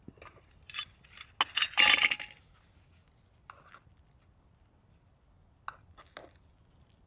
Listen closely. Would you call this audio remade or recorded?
recorded